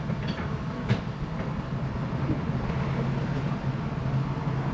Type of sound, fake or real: real